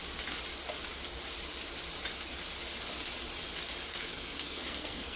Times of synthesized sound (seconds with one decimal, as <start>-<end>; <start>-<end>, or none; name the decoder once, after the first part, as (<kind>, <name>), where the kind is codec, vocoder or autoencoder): 3.9-5.2 (codec, SNAC)